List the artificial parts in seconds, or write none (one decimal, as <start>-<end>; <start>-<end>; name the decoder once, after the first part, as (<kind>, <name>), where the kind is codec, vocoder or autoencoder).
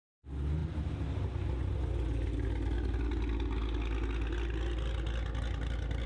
none